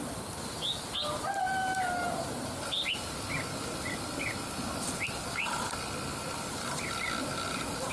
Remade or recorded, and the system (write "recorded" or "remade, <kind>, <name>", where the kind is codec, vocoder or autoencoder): recorded